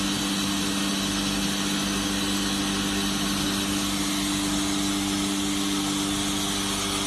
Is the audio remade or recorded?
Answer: recorded